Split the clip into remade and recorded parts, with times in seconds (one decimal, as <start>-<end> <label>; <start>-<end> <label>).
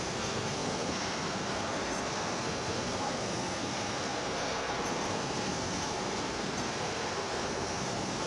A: 0.0-8.3 remade